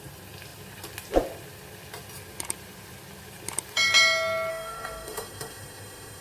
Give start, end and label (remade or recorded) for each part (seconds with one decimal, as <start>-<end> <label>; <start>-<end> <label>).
0.0-4.5 recorded; 4.5-6.2 remade